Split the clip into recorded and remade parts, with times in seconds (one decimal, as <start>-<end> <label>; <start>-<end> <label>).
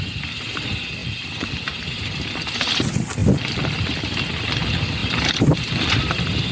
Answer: 0.0-1.0 recorded; 1.0-2.3 remade; 2.3-3.2 recorded; 3.2-3.9 remade; 3.9-5.0 recorded; 5.0-6.0 remade; 6.0-6.5 recorded